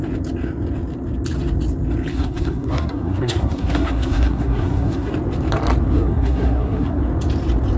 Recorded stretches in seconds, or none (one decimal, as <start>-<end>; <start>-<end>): 0.0-2.1; 5.1-5.9; 7.0-7.8